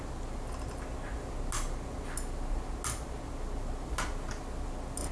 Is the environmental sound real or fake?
real